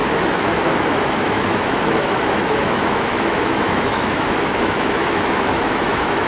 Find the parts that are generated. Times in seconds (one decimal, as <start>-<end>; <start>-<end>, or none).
0.0-6.3

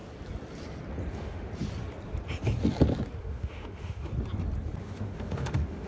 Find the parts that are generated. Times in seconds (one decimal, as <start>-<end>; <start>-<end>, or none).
1.1-1.5; 3.2-4.1; 4.8-5.9

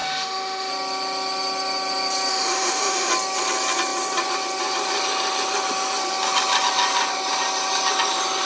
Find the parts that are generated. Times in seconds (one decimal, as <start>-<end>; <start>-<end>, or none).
0.0-0.7; 2.3-3.1

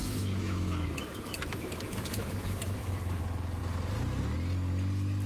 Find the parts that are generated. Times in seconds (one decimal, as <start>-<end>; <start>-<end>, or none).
0.0-3.2